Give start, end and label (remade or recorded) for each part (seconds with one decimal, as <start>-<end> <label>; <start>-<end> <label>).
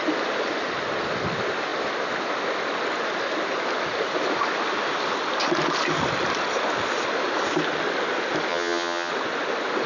0.0-8.5 recorded; 8.5-9.1 remade; 9.1-9.9 recorded